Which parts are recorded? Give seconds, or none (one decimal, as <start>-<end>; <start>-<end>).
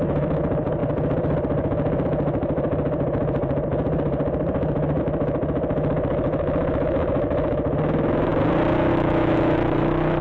0.8-5.0; 8.3-8.9